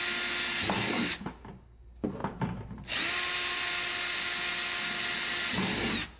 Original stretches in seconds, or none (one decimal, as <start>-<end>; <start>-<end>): 0.0-6.2